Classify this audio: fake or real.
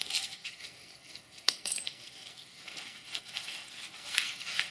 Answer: fake